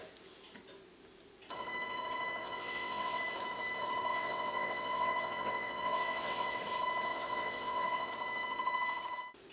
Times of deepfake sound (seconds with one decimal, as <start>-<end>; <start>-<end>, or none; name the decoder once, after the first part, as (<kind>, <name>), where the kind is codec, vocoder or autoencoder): 2.4-3.2 (vocoder, WaveNeXt); 4.1-6.6; 7.1-8.1